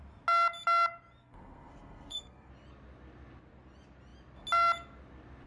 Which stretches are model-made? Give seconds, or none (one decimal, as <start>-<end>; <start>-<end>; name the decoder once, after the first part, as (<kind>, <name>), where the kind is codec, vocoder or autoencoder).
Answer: 1.2-2.5 (codec, SNAC)